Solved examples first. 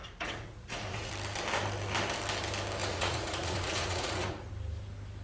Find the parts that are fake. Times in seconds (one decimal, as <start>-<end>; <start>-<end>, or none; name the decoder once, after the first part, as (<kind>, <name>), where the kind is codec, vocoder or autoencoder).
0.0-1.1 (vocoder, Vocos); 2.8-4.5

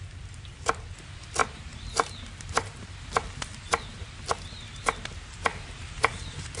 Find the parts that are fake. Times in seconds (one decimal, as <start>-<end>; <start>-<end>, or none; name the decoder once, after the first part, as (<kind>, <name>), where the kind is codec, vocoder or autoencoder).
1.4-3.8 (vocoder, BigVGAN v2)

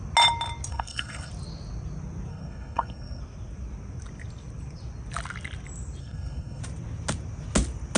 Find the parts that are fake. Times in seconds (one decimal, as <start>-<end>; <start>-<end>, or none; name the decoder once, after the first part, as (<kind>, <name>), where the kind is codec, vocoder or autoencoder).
0.7-1.3 (codec, SNAC); 2.3-3.2; 6.0-6.6

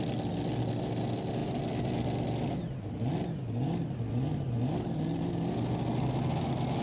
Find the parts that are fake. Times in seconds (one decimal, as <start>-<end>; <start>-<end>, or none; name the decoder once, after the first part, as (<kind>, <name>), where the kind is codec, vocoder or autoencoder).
none

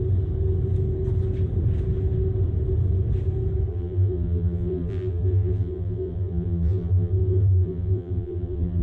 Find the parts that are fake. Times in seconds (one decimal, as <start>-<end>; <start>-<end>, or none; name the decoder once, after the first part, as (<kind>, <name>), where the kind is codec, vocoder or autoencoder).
3.7-8.8 (vocoder, BigVGAN v2)

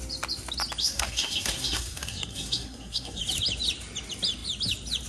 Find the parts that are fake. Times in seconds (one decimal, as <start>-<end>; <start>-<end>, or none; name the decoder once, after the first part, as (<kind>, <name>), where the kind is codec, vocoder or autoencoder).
0.8-3.2 (codec, SNAC)

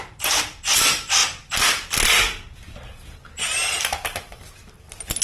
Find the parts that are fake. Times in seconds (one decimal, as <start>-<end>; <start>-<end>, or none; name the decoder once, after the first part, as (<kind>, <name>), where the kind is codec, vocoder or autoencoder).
none

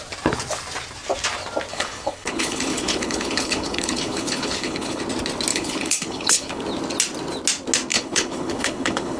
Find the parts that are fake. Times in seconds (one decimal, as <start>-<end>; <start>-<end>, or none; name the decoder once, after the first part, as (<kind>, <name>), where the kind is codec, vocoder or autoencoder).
1.7-5.0 (codec, HILCodec); 5.5-6.6; 7.9-9.2